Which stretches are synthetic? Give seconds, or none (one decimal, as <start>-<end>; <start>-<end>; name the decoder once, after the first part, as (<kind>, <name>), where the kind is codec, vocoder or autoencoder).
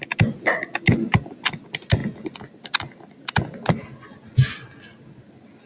none